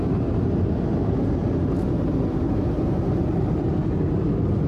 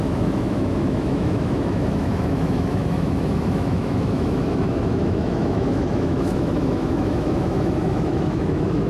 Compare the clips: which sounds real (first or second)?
first